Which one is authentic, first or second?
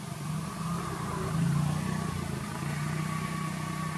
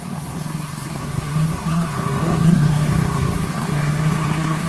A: first